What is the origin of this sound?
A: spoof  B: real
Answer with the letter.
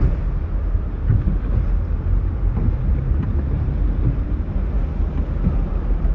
B